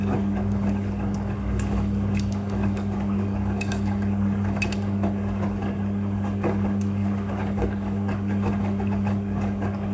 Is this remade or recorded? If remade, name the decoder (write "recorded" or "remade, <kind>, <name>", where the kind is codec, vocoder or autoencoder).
remade, codec, DAC